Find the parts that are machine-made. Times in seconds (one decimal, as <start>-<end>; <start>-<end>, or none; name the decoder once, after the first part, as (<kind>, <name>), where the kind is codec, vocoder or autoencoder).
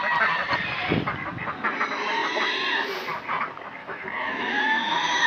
3.8-5.3 (autoencoder, DAC-VAE)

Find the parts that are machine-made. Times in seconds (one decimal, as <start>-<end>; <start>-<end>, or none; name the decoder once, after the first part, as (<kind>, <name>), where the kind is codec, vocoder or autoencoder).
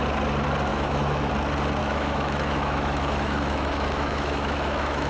0.7-1.3 (autoencoder, DAC-VAE); 1.8-5.1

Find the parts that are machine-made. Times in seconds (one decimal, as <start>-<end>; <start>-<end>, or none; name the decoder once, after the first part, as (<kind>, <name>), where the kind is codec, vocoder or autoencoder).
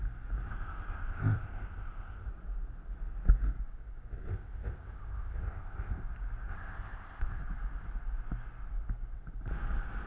0.5-2.3 (codec, ZipCodec); 4.3-6.0; 6.5-7.4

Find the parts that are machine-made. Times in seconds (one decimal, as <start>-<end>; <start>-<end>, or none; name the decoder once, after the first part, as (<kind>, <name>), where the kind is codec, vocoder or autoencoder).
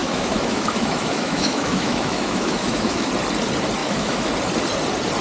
0.0-3.1 (autoencoder, DAC-VAE); 3.8-4.3